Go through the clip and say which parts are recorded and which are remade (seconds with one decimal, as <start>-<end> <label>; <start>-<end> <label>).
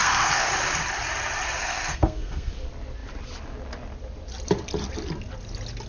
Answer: 0.0-0.5 remade; 0.5-1.6 recorded; 1.6-2.5 remade; 2.5-5.9 recorded